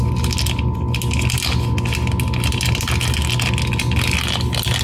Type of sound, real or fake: real